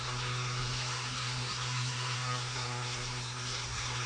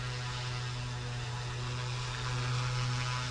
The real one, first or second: second